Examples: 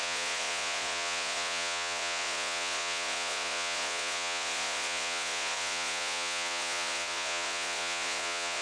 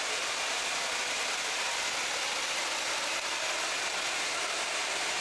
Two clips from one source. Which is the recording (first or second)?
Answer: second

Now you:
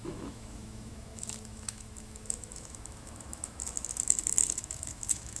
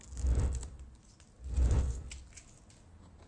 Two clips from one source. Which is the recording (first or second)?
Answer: second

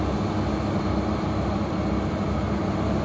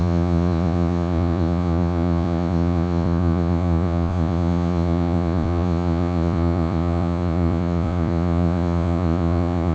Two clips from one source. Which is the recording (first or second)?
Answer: first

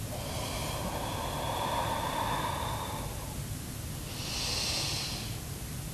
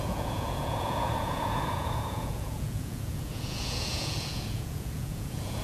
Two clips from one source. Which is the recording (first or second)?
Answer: first